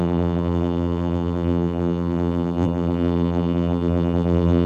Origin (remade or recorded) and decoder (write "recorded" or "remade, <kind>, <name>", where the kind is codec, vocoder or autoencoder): remade, vocoder, BigVGAN v2